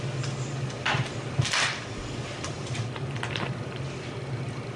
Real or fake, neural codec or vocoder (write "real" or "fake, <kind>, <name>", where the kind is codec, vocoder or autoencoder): real